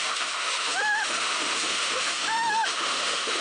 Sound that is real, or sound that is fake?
fake